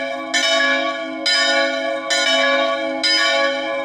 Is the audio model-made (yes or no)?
no